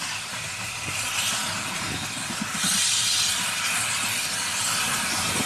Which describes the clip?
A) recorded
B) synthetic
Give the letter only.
A